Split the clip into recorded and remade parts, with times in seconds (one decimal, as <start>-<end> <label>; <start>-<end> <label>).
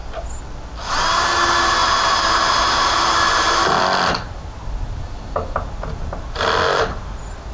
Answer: 0.0-7.5 recorded